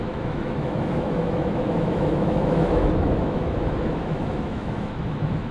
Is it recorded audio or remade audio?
remade